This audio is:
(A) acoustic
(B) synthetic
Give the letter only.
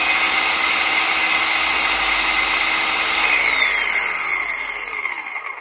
A